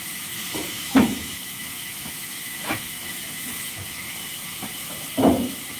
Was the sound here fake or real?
fake